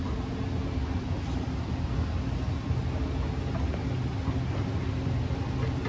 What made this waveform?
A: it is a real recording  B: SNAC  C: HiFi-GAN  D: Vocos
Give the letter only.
A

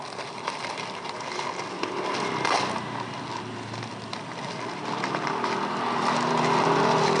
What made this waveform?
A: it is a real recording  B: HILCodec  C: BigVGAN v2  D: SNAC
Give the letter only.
A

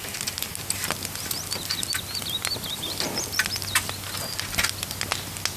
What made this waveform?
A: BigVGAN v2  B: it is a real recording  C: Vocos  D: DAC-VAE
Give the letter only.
B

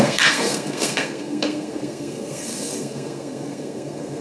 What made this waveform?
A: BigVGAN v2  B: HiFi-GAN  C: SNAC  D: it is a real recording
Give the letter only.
C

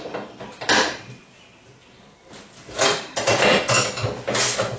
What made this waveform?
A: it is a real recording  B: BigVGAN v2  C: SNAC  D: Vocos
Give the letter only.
A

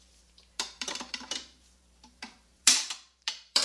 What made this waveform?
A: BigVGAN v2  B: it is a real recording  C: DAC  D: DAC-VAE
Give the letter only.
A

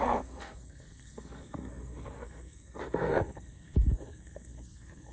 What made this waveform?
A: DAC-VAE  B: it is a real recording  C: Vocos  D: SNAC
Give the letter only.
D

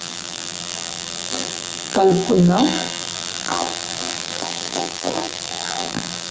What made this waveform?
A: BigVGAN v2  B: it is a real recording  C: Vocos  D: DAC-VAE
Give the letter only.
A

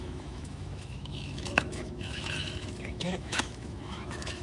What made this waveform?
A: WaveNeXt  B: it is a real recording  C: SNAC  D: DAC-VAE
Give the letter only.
D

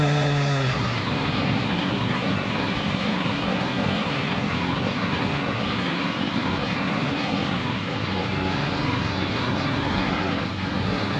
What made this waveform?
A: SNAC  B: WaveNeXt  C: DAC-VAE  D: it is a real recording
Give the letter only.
A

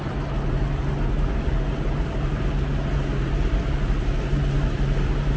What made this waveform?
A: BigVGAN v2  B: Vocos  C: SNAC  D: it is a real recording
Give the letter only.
D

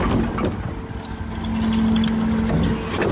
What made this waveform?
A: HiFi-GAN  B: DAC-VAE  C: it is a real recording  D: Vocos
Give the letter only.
C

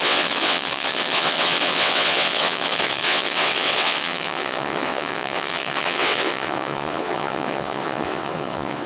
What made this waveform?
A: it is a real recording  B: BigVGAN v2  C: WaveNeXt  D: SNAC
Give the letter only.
C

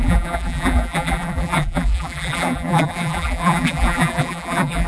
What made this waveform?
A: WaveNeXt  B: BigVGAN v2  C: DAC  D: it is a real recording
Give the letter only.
B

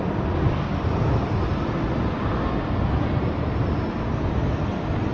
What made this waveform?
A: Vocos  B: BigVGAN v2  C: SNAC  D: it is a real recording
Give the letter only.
D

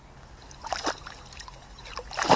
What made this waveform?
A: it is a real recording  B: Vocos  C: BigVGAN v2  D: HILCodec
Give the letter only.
A